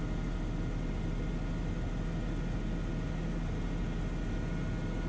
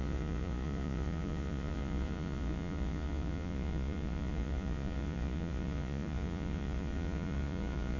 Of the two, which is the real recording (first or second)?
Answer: first